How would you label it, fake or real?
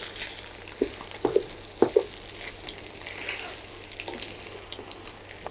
real